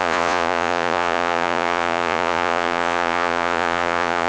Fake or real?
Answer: fake